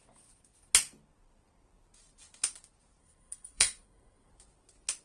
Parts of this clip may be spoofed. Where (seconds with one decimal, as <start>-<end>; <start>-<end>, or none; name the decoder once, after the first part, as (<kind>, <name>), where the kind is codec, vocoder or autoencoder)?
3.0-4.3 (codec, SNAC)